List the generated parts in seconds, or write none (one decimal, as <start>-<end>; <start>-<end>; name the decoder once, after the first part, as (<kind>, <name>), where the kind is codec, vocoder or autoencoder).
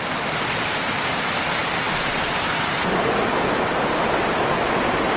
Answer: 1.6-4.2 (vocoder, BigVGAN v2)